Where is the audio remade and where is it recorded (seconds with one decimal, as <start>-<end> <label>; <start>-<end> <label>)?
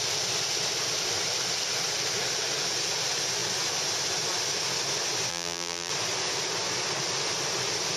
0.0-5.3 recorded; 5.3-5.9 remade; 5.9-8.0 recorded